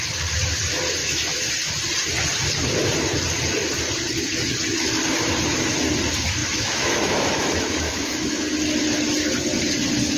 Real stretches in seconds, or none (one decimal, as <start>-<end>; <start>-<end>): 0.0-1.0; 1.5-6.4; 8.4-10.2